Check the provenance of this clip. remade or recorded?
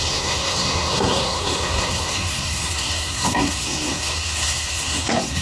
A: remade